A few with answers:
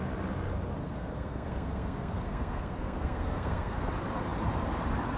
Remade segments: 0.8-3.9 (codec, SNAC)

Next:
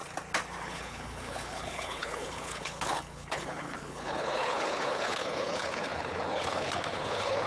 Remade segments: 0.6-7.5 (codec, HILCodec)

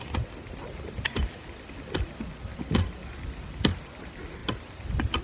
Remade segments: none

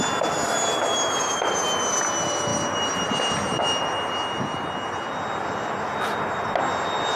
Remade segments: none

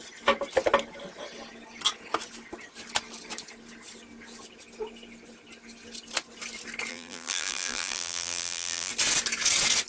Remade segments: 6.9-8.9 (vocoder, BigVGAN v2)